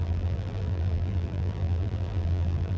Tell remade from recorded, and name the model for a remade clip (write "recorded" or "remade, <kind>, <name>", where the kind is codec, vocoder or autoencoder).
remade, vocoder, BigVGAN v2